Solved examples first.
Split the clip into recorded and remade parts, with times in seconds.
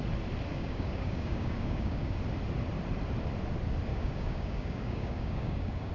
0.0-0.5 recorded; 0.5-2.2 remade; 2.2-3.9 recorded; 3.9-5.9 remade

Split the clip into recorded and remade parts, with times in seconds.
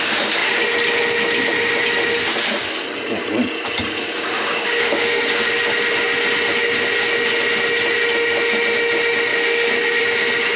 0.0-4.0 recorded; 4.0-5.5 remade; 5.5-9.3 recorded; 9.3-10.0 remade; 10.0-10.6 recorded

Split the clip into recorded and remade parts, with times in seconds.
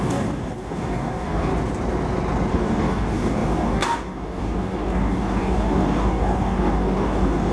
0.0-1.5 remade; 1.5-2.5 recorded; 2.5-7.5 remade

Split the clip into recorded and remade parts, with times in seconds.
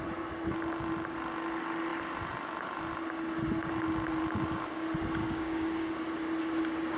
0.0-5.2 recorded; 5.2-5.9 remade; 5.9-7.0 recorded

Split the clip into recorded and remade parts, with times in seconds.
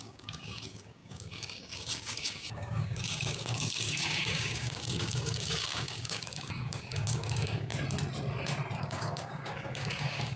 0.0-7.7 remade; 7.7-8.8 recorded; 8.8-10.4 remade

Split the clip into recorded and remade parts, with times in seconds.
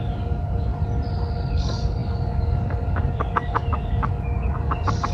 0.0-0.7 remade; 0.7-1.5 recorded; 1.5-5.1 remade